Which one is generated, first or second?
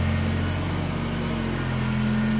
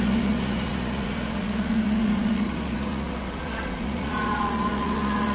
second